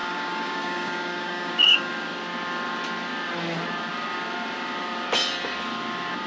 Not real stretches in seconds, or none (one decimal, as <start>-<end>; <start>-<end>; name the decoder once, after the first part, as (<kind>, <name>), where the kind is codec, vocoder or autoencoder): 0.0-1.9 (codec, DAC)